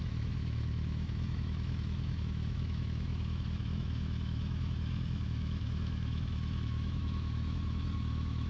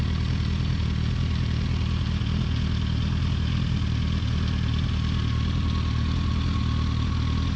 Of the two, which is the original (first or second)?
second